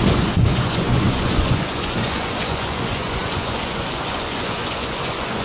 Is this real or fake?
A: fake